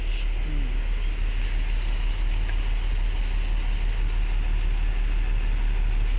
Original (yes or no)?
yes